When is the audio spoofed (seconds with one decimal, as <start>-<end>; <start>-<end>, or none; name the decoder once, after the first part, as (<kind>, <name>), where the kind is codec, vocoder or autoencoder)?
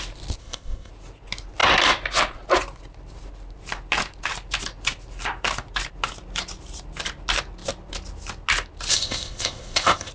0.4-0.9 (codec, ZipCodec); 8.9-10.1